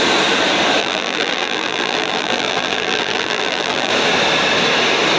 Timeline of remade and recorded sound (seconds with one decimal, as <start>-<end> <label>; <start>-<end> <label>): 0.0-0.8 recorded; 0.8-3.9 remade; 3.9-5.2 recorded